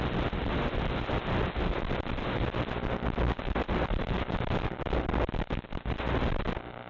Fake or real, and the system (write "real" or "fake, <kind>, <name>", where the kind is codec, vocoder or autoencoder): real